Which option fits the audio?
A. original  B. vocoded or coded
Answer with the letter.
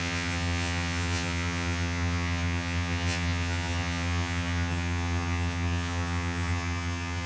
B